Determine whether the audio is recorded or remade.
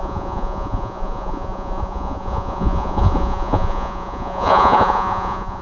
remade